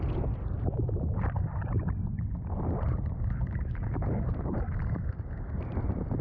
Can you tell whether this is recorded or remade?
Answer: recorded